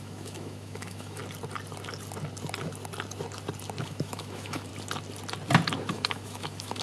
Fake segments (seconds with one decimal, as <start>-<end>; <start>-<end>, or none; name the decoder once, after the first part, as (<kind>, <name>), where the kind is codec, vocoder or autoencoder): 0.0-1.2 (autoencoder, DAC-VAE); 3.8-4.7; 5.9-6.8